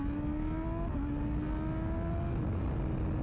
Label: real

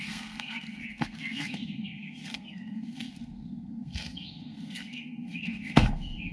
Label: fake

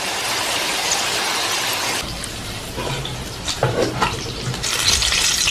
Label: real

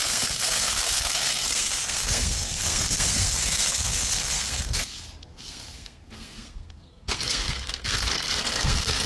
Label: fake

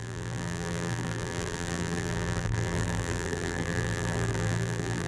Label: fake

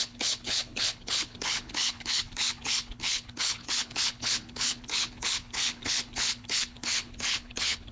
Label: fake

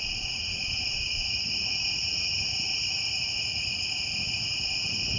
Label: fake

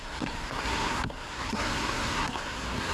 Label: fake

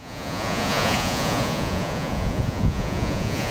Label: fake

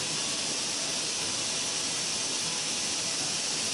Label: real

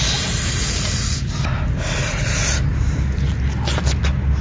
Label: real